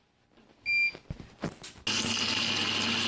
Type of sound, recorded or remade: recorded